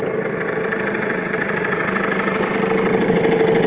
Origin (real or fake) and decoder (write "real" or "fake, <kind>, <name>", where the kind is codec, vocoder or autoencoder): real